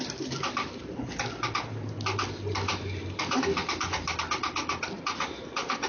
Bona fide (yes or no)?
yes